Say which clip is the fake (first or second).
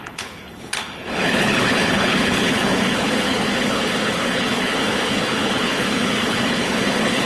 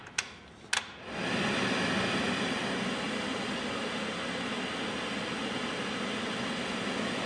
first